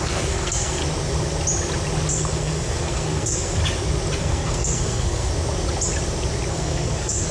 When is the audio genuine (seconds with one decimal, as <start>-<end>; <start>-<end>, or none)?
0.8-2.1; 3.6-4.2; 5.3-6.5

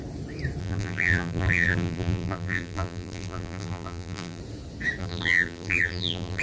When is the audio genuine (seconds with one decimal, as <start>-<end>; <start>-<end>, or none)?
0.0-0.6; 4.4-5.0